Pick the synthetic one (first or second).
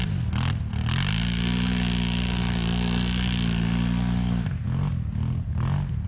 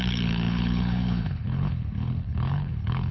second